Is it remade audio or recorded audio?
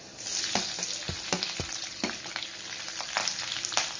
recorded